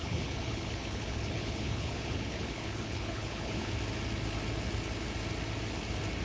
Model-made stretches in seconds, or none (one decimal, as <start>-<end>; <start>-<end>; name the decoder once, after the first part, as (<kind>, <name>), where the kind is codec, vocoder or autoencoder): 0.0-3.7 (codec, HILCodec)